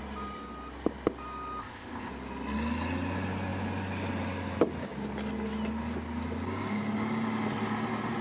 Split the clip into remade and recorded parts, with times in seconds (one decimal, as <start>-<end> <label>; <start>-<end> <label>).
0.0-1.6 recorded; 1.6-2.1 remade; 2.1-8.2 recorded